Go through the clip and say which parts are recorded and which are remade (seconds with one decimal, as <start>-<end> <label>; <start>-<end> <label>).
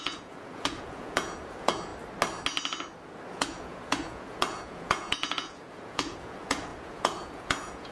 0.0-1.9 remade; 1.9-3.3 recorded; 3.3-7.9 remade